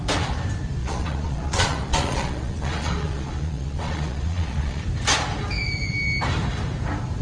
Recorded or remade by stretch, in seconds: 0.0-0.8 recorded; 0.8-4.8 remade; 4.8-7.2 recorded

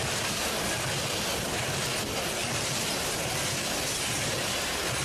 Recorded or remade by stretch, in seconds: 0.0-5.0 recorded

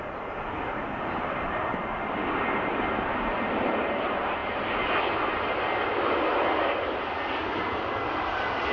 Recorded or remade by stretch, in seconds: 0.0-8.7 recorded

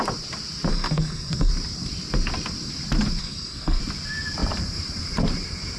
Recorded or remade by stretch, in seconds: 0.0-0.7 recorded; 0.7-1.5 remade; 1.5-3.2 recorded; 3.2-3.8 remade; 3.8-5.8 recorded

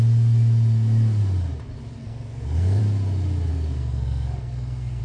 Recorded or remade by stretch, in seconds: 0.0-2.0 recorded; 2.0-2.8 remade; 2.8-3.5 recorded; 3.5-5.0 remade

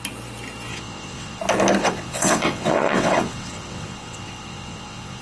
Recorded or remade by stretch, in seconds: 0.0-0.7 recorded; 0.7-1.4 remade; 1.4-1.8 recorded; 1.8-5.2 remade

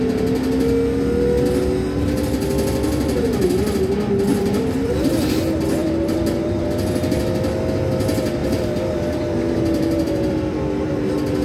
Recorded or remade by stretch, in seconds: 0.0-4.3 recorded; 4.3-4.9 remade; 4.9-5.8 recorded; 5.8-7.2 remade; 7.2-8.4 recorded; 8.4-10.3 remade; 10.3-11.4 recorded